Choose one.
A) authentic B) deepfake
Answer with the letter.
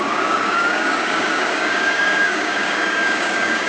B